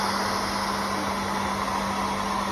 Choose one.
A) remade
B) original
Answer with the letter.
B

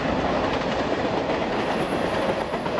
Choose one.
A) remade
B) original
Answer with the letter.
B